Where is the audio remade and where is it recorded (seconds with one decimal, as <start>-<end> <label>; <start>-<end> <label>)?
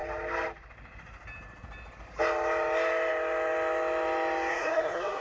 0.0-4.5 recorded; 4.5-5.2 remade